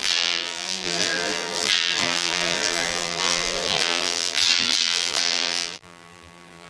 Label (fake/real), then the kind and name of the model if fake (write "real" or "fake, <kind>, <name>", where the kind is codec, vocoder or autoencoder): fake, vocoder, BigVGAN v2